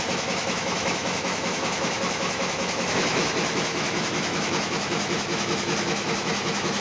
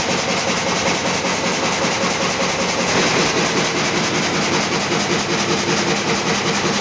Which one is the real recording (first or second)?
second